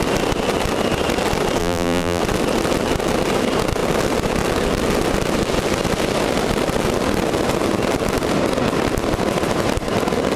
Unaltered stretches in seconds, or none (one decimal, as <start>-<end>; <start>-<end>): 0.0-1.6; 2.2-10.4